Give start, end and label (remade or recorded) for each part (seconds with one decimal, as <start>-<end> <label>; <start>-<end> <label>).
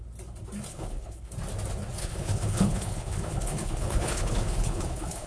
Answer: 0.0-0.7 recorded; 0.7-1.3 remade; 1.3-2.0 recorded; 2.0-5.3 remade